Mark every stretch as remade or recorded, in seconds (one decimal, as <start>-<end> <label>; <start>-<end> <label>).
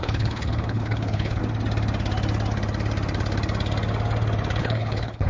0.0-1.4 remade; 1.4-4.6 recorded; 4.6-5.3 remade